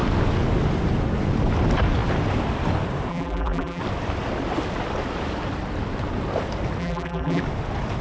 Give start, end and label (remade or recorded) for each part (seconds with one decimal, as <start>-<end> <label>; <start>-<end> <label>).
0.0-3.1 recorded; 3.1-3.8 remade; 3.8-6.8 recorded; 6.8-7.4 remade; 7.4-8.0 recorded